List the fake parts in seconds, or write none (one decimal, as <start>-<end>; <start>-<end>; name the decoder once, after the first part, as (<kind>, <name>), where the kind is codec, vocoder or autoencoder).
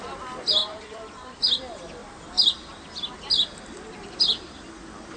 0.6-1.4 (vocoder, BigVGAN v2); 2.0-2.7